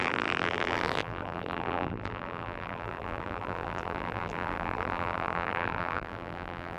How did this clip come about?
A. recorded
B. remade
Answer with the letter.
B